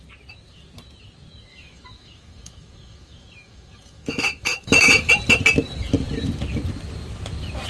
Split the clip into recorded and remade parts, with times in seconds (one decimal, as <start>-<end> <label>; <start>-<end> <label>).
0.0-1.5 recorded; 1.5-5.1 remade; 5.1-7.7 recorded